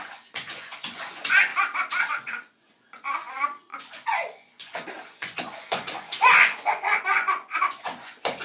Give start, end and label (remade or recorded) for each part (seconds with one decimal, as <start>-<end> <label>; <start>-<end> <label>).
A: 0.0-1.5 remade; 1.5-2.1 recorded; 2.1-8.4 remade